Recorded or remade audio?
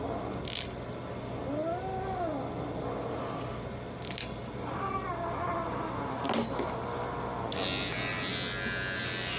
recorded